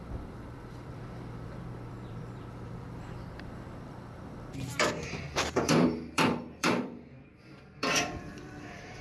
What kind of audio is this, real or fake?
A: fake